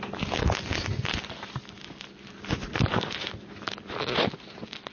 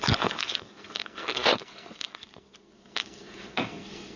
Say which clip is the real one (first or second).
first